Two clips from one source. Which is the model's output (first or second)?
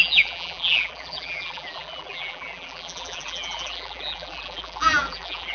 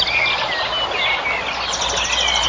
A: first